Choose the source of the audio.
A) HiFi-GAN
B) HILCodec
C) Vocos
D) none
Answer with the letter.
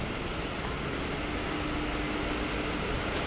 D